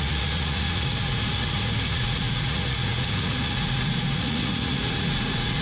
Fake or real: fake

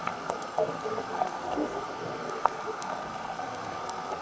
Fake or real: fake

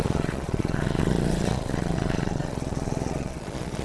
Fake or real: fake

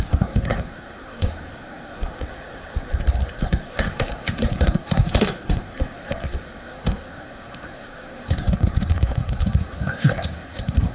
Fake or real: fake